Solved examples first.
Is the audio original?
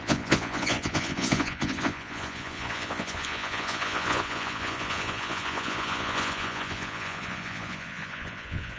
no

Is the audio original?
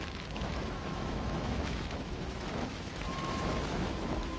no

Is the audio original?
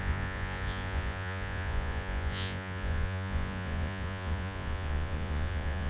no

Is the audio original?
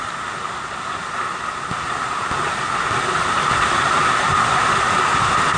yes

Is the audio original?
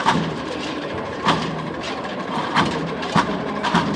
no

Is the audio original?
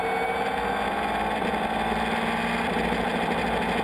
yes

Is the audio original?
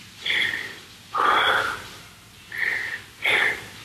yes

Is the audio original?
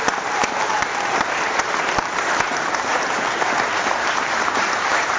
no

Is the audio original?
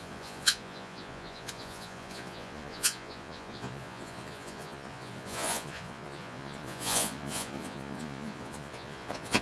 no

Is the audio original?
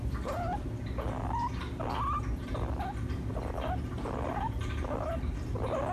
yes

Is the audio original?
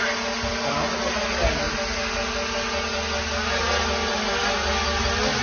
yes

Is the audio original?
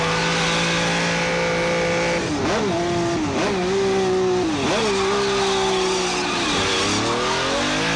yes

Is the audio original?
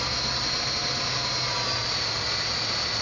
yes